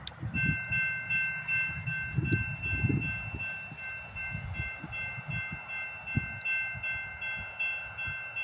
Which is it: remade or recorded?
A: recorded